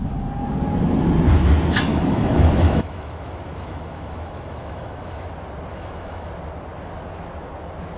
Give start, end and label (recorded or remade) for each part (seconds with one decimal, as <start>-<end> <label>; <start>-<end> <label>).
0.0-1.9 recorded; 1.9-5.3 remade; 5.3-5.7 recorded; 5.7-6.3 remade; 6.3-8.0 recorded